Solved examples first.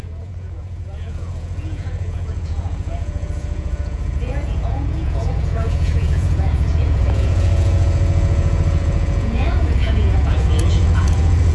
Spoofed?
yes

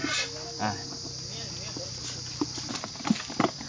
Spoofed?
no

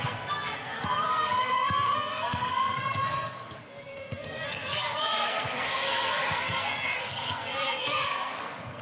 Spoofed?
yes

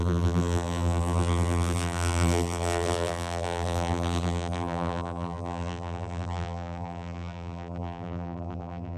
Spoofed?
yes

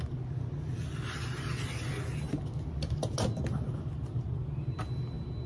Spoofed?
no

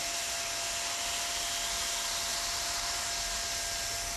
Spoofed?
no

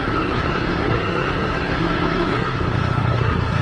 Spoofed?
yes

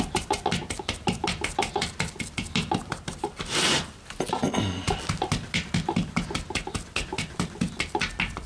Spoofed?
no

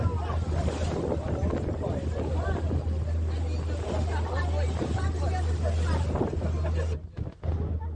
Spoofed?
no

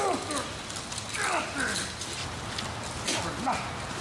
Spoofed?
no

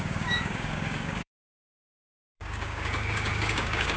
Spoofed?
yes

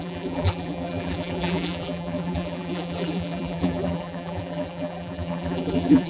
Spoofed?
yes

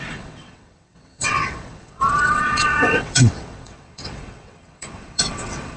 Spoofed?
yes